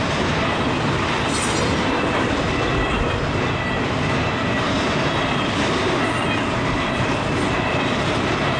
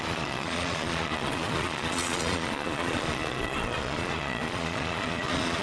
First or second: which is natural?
first